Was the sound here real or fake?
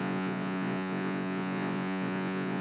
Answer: fake